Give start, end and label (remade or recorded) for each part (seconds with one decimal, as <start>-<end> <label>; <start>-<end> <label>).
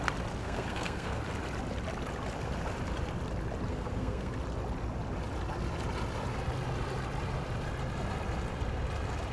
0.0-0.4 recorded; 0.4-1.2 remade; 1.2-3.7 recorded; 3.7-4.3 remade; 4.3-9.3 recorded